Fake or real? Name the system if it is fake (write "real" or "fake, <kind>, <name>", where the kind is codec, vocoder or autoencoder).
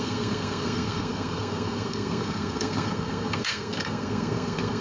fake, codec, SNAC